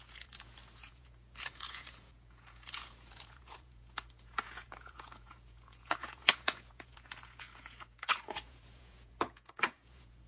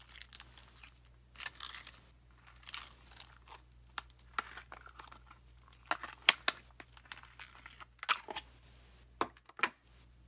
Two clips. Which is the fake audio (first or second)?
first